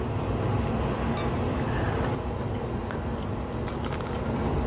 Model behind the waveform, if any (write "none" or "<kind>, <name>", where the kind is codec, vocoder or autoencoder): none